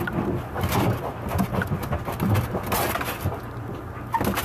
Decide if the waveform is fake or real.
real